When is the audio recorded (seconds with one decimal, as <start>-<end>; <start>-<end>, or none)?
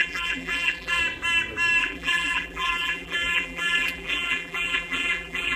1.0-1.8